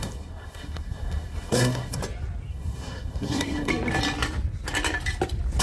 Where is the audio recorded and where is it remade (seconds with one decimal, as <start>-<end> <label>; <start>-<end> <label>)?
0.0-2.0 remade; 2.0-2.5 recorded; 2.5-3.7 remade; 3.7-5.6 recorded

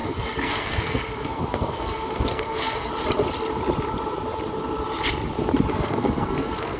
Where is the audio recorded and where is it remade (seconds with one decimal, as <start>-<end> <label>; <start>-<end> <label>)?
0.0-2.9 remade; 2.9-5.7 recorded; 5.7-6.8 remade

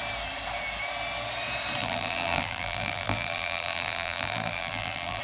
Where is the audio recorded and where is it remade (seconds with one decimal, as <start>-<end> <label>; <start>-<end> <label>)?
0.0-1.8 recorded; 1.8-5.2 remade

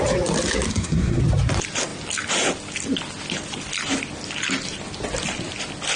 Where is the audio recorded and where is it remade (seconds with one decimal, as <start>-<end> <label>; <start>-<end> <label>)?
0.0-0.7 recorded; 0.7-1.2 remade; 1.2-6.0 recorded

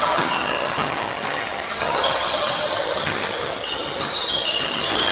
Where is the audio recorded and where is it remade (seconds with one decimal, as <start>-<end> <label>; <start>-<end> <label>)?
0.0-5.1 remade

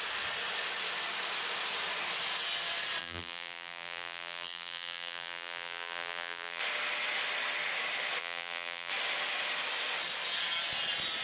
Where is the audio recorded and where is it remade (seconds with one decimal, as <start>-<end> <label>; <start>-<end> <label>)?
0.0-3.0 recorded; 3.0-6.6 remade; 6.6-8.2 recorded; 8.2-8.9 remade; 8.9-11.2 recorded